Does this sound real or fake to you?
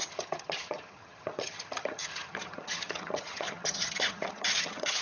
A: fake